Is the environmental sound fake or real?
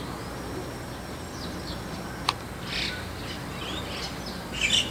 real